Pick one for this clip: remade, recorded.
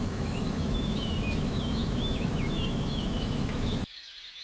remade